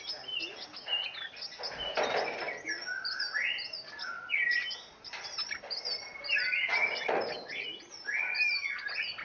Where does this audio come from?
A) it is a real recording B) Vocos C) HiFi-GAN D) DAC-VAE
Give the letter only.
A